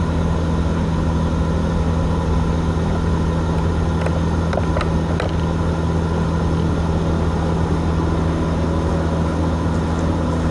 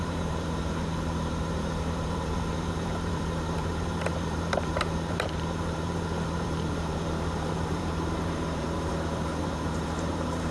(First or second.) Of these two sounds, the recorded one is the first